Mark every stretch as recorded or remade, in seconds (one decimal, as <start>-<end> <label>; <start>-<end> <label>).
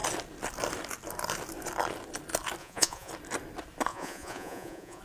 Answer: 0.0-2.6 recorded; 2.6-3.1 remade; 3.1-3.9 recorded; 3.9-5.0 remade